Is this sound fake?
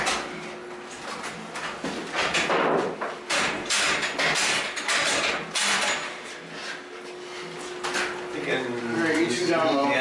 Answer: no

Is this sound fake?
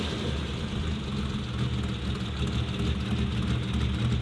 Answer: no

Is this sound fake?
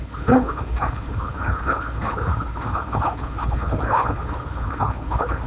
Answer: yes